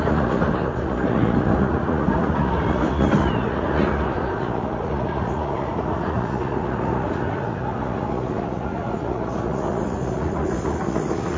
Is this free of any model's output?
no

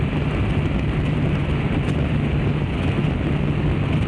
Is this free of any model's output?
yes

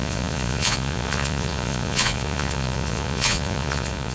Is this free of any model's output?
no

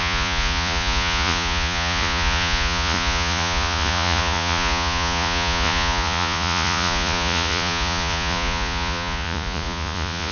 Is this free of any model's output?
no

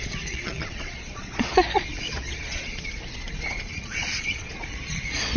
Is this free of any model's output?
no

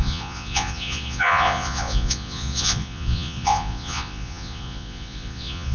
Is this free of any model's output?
no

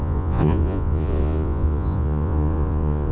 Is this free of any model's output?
no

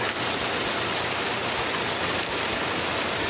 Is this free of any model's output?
yes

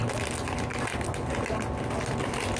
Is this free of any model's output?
yes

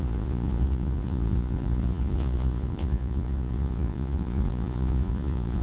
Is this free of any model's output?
no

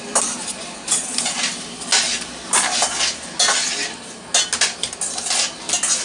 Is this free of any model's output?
yes